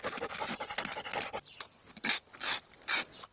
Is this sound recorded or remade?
recorded